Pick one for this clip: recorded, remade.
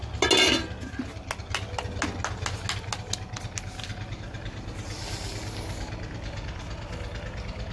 recorded